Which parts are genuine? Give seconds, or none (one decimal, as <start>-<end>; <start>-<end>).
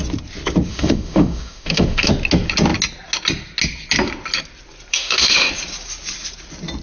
0.0-0.7; 2.1-4.9; 5.5-6.8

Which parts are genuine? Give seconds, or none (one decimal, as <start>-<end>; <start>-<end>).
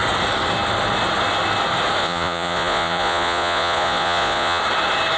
0.0-2.0; 4.6-5.2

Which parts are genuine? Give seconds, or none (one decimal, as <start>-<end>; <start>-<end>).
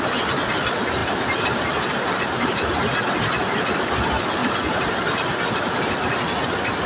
0.0-6.9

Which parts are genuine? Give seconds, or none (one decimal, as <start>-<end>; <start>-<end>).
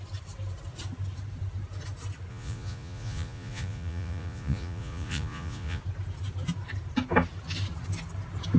0.0-2.3; 5.8-8.6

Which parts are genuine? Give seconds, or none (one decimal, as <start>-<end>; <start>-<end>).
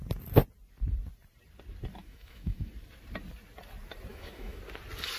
0.0-2.0; 2.7-4.1; 4.6-5.2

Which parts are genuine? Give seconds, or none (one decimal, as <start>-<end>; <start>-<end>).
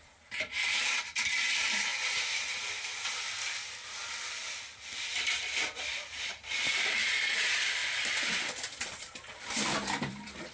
1.9-3.7